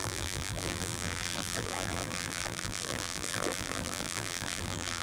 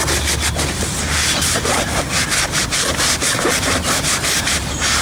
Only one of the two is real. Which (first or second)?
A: second